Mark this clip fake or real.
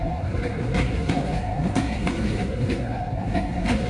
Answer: fake